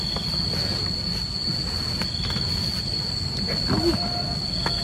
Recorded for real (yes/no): yes